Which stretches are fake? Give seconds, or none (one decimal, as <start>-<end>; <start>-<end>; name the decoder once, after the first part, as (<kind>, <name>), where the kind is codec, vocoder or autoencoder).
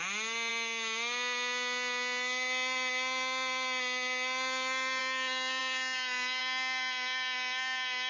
none